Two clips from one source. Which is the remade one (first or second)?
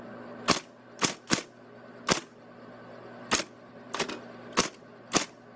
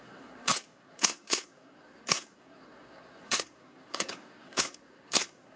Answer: second